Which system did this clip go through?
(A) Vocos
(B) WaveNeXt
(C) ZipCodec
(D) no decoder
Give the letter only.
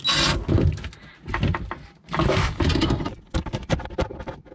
D